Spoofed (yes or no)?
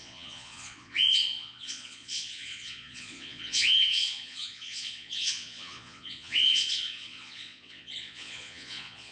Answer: yes